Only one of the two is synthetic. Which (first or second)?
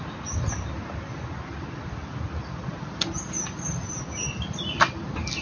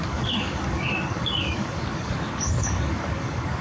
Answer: second